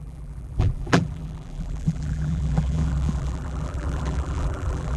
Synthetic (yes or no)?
yes